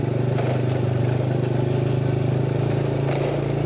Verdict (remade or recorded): recorded